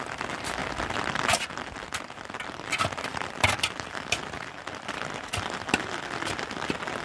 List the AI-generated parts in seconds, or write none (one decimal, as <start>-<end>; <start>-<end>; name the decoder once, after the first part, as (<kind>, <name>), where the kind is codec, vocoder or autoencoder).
3.1-4.2 (vocoder, BigVGAN v2)